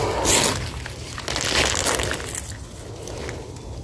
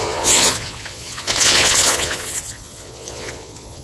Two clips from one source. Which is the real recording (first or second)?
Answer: first